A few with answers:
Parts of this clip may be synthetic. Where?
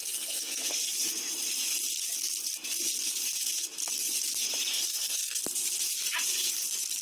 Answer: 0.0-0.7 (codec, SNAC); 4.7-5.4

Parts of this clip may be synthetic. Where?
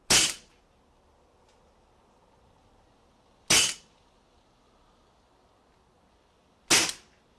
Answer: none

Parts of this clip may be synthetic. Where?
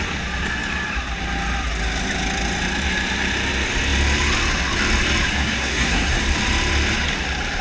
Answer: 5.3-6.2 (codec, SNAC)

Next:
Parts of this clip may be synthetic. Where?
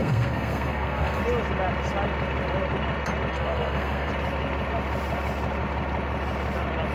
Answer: 0.0-1.2 (codec, SNAC); 3.3-4.1